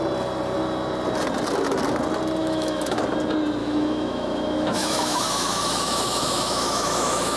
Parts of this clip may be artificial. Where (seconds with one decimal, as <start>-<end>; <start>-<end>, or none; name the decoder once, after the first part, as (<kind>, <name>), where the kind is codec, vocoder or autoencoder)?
2.4-3.0 (autoencoder, DAC-VAE); 3.6-7.4